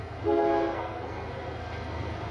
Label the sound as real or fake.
fake